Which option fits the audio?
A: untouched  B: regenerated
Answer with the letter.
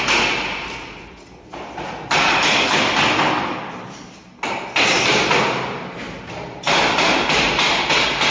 A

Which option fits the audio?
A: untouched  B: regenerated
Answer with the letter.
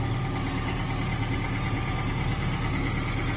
A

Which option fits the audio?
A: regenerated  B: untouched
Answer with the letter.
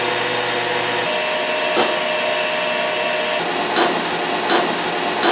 B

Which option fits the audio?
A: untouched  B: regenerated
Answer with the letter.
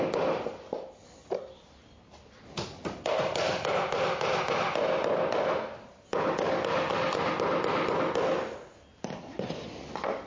A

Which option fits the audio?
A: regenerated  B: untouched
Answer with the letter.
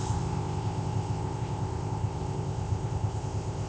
A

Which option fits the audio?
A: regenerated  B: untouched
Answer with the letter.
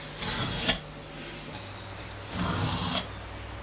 B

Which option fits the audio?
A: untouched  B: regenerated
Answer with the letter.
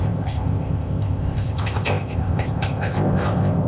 B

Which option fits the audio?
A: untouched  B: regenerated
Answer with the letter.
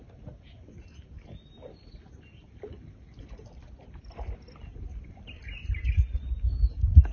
A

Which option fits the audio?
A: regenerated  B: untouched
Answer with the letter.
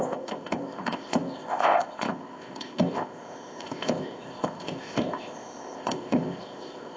A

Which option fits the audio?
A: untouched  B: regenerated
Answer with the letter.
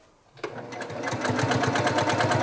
A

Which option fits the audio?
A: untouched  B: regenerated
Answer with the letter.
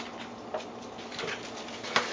A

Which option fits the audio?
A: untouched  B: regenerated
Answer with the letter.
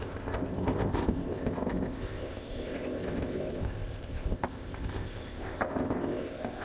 B